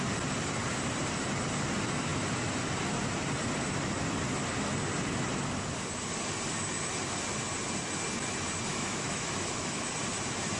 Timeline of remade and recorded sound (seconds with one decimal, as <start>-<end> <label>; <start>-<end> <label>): 0.0-8.7 recorded; 8.7-9.9 remade; 9.9-10.6 recorded